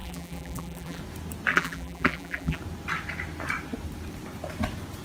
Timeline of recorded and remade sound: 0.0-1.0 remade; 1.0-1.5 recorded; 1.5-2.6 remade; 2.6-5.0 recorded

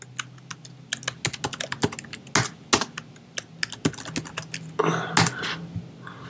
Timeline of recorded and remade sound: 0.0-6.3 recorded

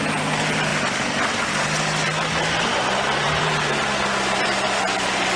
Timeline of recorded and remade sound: 0.0-0.7 recorded; 0.7-1.5 remade; 1.5-2.7 recorded; 2.7-3.4 remade; 3.4-5.4 recorded

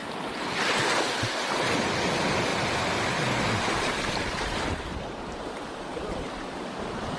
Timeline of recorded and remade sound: 0.0-0.6 remade; 0.6-2.5 recorded; 2.5-5.5 remade; 5.5-5.9 recorded; 5.9-6.4 remade; 6.4-7.2 recorded

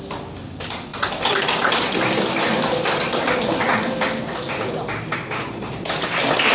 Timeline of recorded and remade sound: 0.0-6.5 remade

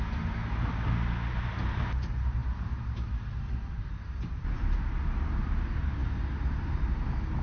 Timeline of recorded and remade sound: 0.0-2.4 recorded; 2.4-4.8 remade; 4.8-7.4 recorded

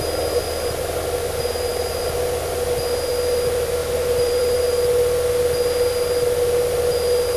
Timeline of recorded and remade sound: 0.0-3.8 recorded; 3.8-4.6 remade; 4.6-7.4 recorded